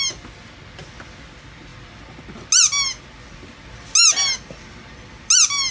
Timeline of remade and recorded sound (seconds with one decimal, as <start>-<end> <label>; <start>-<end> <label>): 0.0-5.7 recorded